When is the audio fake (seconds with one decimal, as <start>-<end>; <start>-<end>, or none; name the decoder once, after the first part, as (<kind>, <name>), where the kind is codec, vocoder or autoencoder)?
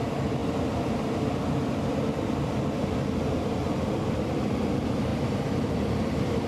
0.0-0.4 (vocoder, BigVGAN v2); 3.5-6.5